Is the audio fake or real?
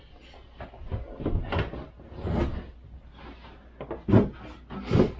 real